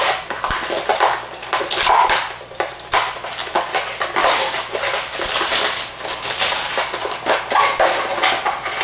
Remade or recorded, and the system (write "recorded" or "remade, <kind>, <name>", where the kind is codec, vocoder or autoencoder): recorded